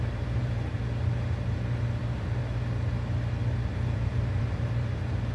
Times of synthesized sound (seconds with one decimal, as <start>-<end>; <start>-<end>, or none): 0.0-0.8; 2.0-2.4; 3.7-5.3